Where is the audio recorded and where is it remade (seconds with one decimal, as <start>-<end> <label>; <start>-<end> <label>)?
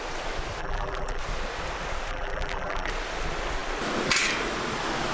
0.0-0.6 recorded; 0.6-1.2 remade; 1.2-2.1 recorded; 2.1-2.9 remade; 2.9-5.1 recorded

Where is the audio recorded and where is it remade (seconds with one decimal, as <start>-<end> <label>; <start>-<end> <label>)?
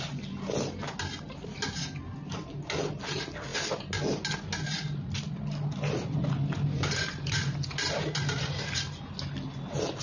0.0-10.0 recorded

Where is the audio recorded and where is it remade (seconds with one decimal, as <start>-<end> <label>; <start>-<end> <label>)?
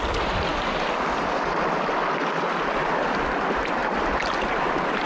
0.0-5.1 recorded